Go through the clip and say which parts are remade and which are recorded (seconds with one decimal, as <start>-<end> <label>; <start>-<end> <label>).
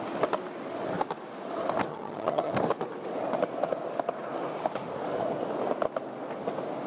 0.0-1.9 recorded; 1.9-2.5 remade; 2.5-6.9 recorded